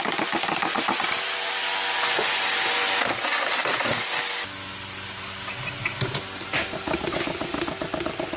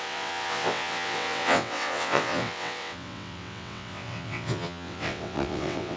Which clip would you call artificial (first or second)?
second